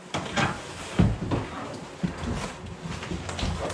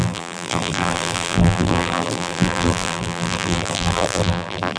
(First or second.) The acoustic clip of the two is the first